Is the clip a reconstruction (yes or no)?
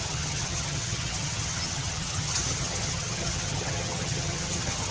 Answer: yes